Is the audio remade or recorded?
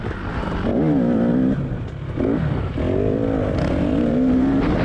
recorded